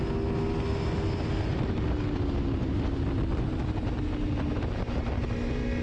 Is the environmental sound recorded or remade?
recorded